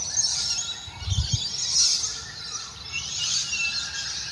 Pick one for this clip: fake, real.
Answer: real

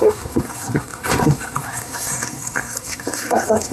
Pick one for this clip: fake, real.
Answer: fake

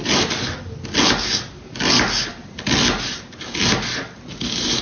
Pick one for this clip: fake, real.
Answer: real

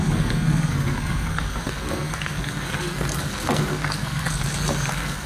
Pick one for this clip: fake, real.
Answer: fake